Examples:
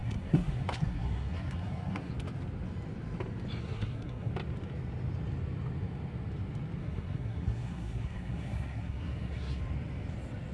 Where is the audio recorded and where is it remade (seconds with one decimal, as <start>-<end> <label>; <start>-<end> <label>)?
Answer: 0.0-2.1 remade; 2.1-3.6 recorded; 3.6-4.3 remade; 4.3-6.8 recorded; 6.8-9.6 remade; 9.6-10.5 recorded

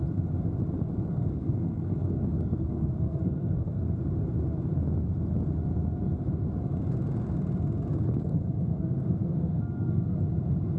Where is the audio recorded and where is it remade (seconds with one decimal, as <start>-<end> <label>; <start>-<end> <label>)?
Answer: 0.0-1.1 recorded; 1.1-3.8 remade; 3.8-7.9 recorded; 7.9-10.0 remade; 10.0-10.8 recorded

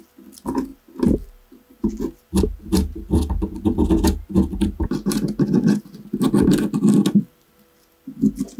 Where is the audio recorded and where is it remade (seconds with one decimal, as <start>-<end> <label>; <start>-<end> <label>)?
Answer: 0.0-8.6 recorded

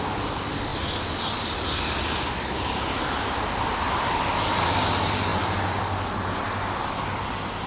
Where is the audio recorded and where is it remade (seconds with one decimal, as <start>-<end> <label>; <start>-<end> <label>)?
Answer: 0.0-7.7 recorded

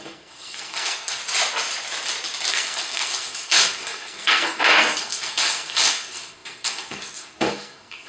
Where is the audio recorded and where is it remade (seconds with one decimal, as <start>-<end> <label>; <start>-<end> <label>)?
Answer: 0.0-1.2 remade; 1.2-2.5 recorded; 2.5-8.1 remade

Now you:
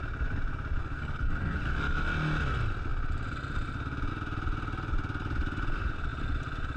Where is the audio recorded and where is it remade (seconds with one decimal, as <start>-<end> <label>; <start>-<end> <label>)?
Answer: 0.0-0.8 recorded; 0.8-1.6 remade; 1.6-6.8 recorded